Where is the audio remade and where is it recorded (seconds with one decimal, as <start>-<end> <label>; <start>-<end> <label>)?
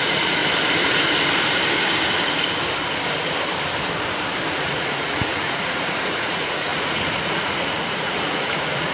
0.0-0.4 remade; 0.4-4.5 recorded; 4.5-8.9 remade